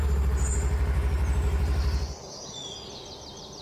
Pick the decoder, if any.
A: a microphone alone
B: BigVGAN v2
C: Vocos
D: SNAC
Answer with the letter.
A